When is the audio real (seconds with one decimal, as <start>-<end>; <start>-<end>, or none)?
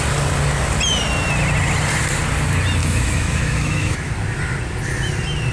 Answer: 0.0-2.8; 4.1-5.5